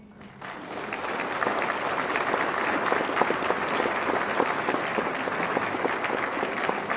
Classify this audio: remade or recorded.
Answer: recorded